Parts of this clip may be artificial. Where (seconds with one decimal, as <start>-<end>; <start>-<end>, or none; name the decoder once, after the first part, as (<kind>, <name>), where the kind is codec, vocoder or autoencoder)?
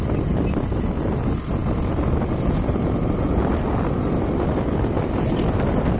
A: none